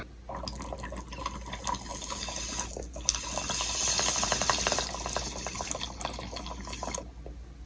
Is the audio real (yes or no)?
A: yes